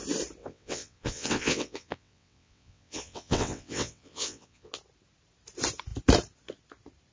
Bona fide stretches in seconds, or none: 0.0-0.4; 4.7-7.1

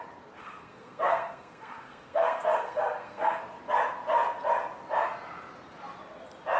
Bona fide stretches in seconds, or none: 0.0-0.4; 3.4-6.6

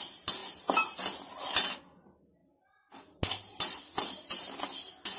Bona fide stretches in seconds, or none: 0.0-5.2

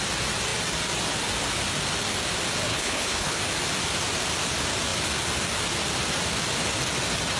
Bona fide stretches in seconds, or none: 0.0-2.7; 3.4-7.4

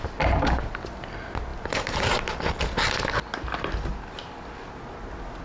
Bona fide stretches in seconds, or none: 0.0-5.4